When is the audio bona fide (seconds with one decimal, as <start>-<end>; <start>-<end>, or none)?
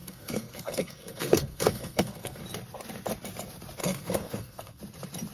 2.4-3.8; 4.8-5.3